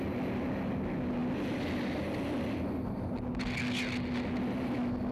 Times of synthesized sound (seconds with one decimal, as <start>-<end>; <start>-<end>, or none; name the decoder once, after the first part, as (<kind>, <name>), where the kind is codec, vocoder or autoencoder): none